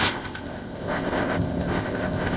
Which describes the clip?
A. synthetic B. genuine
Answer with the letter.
A